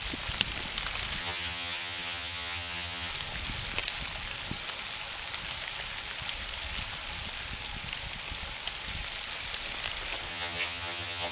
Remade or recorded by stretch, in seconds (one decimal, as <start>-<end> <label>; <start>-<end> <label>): 0.0-1.2 recorded; 1.2-3.1 remade; 3.1-10.3 recorded; 10.3-11.3 remade